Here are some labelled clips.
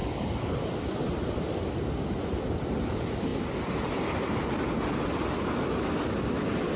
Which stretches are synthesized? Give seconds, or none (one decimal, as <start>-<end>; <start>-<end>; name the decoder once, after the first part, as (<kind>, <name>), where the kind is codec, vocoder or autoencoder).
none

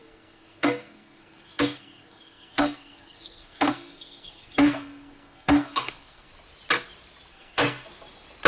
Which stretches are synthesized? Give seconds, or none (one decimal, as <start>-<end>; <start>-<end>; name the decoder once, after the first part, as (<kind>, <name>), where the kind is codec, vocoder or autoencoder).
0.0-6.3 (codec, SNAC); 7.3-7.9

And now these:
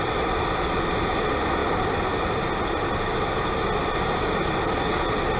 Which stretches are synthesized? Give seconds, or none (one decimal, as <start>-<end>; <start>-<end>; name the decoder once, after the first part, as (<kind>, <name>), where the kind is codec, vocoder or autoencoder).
none

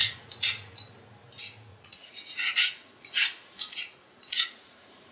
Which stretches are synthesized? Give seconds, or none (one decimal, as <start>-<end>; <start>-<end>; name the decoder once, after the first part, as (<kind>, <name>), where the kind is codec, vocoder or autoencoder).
0.0-0.9 (vocoder, Vocos); 1.7-5.1

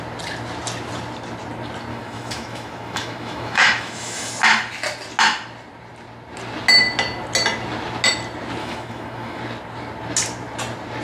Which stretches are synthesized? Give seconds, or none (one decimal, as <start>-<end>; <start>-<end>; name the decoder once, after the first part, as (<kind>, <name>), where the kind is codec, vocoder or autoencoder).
1.9-4.3 (autoencoder, DAC-VAE); 8.6-9.4

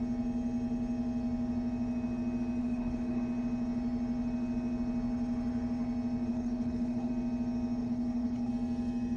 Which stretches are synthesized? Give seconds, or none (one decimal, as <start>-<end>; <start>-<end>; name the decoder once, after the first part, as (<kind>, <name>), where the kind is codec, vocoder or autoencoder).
2.6-3.2 (codec, HILCodec); 6.3-7.1; 7.8-8.5